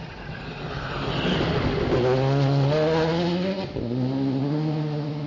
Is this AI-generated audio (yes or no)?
no